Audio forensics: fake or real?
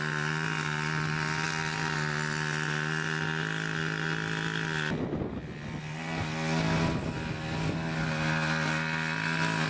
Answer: real